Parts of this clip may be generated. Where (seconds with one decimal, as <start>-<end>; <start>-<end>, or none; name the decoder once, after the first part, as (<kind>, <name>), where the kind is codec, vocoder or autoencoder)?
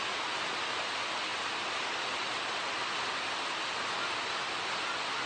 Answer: none